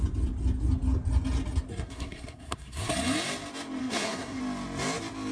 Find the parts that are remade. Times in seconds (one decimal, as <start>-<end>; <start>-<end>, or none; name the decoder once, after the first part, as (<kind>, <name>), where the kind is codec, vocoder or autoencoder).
1.7-2.9 (codec, SNAC); 3.8-4.4